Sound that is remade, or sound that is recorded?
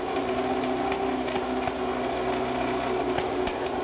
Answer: recorded